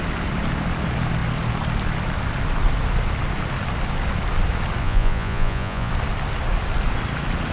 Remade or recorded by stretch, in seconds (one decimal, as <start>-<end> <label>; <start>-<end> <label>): 0.0-4.8 recorded; 4.8-5.9 remade; 5.9-7.5 recorded